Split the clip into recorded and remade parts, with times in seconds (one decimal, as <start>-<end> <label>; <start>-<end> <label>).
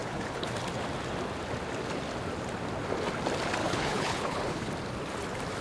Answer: 0.0-0.5 remade; 0.5-3.6 recorded; 3.6-4.7 remade; 4.7-5.6 recorded